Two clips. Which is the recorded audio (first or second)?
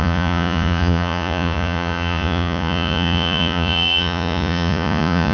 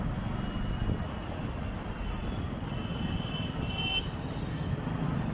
second